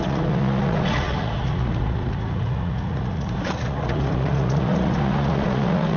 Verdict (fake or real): fake